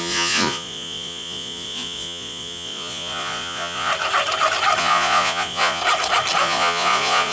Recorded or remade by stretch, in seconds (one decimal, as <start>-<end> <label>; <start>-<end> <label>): 0.0-3.9 remade; 3.9-4.8 recorded; 4.8-5.8 remade; 5.8-6.4 recorded; 6.4-7.3 remade